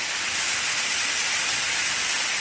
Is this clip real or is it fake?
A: real